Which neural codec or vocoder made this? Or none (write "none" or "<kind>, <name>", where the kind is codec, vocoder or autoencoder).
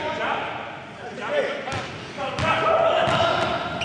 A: none